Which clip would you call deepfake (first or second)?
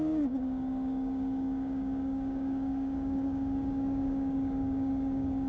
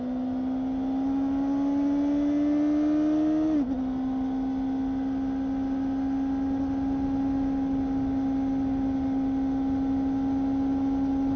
first